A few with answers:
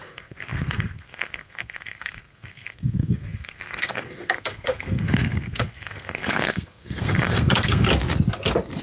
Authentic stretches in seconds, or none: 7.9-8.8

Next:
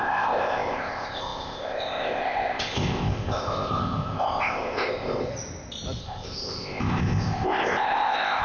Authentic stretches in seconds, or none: 5.3-6.0